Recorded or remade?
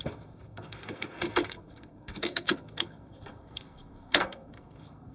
remade